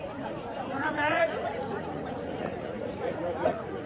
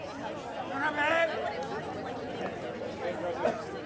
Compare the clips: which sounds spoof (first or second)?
first